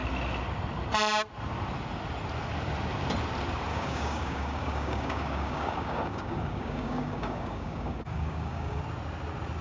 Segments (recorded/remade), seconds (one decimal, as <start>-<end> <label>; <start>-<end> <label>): 0.0-3.7 recorded; 3.7-8.8 remade; 8.8-9.6 recorded